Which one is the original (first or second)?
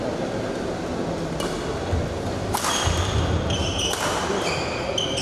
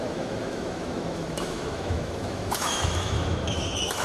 first